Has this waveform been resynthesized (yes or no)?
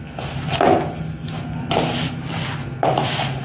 no